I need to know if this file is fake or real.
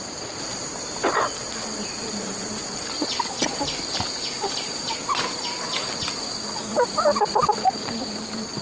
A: fake